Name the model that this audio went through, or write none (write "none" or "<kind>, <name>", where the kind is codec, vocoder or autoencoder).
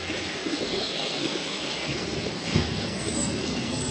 codec, SNAC